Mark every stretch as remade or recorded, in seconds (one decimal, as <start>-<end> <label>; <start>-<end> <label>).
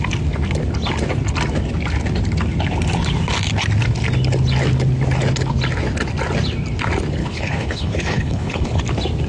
0.0-7.2 recorded; 7.2-8.8 remade; 8.8-9.3 recorded